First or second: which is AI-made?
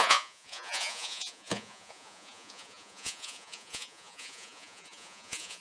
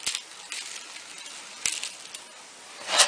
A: first